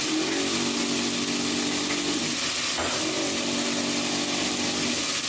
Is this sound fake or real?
real